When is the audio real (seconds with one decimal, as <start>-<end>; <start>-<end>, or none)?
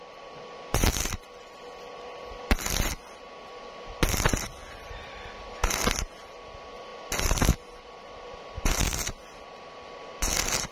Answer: 0.0-10.7